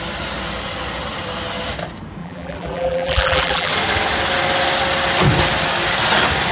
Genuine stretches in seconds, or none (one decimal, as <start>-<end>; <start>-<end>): 0.0-2.2; 3.7-6.5